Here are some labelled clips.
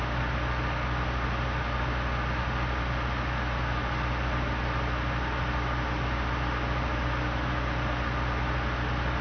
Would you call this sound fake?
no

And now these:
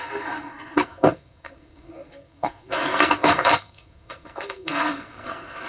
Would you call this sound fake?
yes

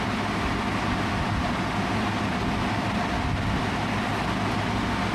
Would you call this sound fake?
no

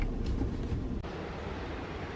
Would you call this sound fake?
no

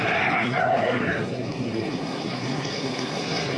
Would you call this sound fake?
yes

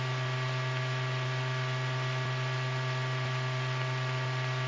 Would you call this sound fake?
no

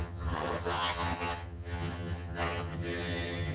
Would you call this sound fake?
yes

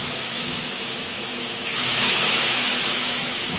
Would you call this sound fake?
yes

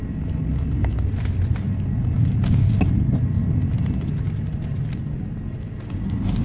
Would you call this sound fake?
no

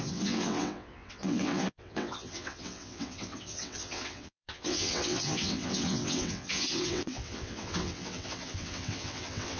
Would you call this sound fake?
yes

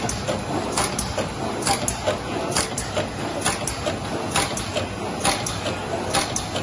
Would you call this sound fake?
no